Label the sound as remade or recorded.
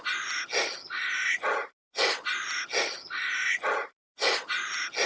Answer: recorded